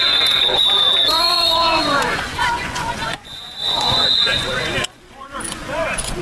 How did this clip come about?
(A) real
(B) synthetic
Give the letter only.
B